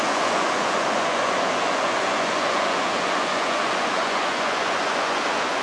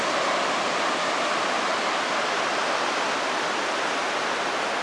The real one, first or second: second